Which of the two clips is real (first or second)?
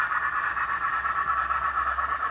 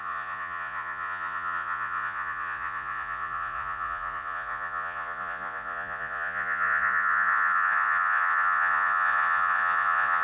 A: first